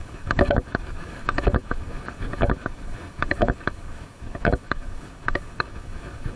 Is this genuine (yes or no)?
no